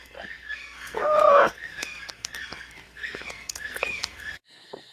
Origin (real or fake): fake